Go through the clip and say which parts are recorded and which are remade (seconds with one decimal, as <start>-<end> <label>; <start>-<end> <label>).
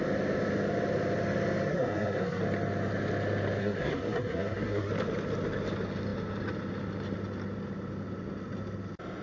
0.0-1.7 recorded; 1.7-2.4 remade; 2.4-3.6 recorded; 3.6-4.9 remade; 4.9-9.2 recorded